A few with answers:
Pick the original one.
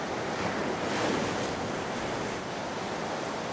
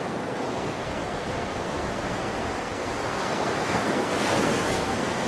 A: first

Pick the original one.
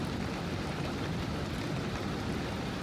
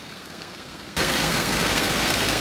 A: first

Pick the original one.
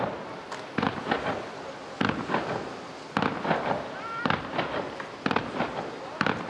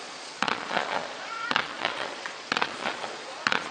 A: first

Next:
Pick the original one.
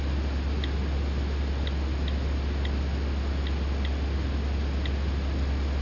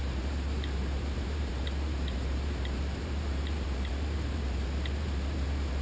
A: first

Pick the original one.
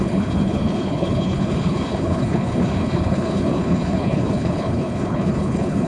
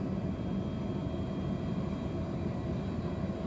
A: second